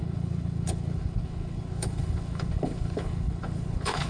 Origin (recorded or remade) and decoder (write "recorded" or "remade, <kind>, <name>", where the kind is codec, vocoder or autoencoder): remade, codec, HILCodec